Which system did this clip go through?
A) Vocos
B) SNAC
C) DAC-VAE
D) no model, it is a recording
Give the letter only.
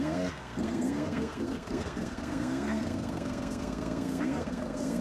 B